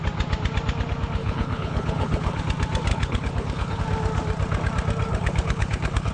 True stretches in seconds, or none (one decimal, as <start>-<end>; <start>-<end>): 0.0-1.2; 2.4-2.9; 3.8-5.1